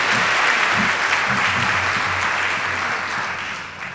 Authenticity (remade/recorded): recorded